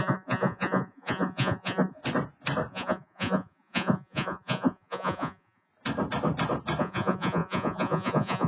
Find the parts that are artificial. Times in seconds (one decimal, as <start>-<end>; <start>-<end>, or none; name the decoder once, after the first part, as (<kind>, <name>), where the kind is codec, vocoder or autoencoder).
0.0-2.0 (vocoder, Vocos); 2.7-5.7; 6.8-8.5